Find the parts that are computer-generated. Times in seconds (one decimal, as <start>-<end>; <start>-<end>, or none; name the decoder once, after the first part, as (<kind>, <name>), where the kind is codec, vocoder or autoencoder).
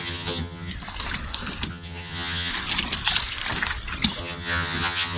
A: 0.0-0.7 (vocoder, HiFi-GAN); 1.7-2.5; 4.2-5.2